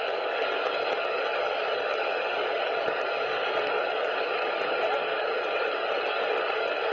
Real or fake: fake